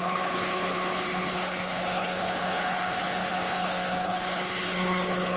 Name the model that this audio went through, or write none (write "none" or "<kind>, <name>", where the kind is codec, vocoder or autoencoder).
codec, HILCodec